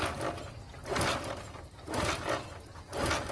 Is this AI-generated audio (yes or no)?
no